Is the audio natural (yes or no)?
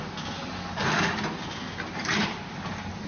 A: yes